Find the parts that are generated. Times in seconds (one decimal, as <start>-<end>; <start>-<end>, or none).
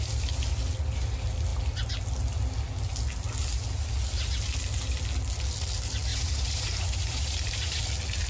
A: 6.1-7.8